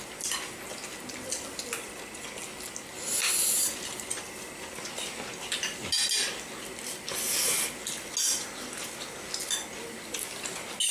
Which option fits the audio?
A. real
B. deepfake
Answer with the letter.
A